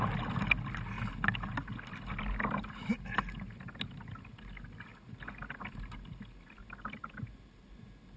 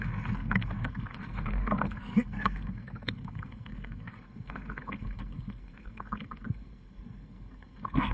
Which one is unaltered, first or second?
first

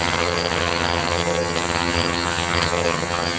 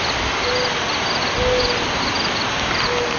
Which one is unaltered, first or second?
second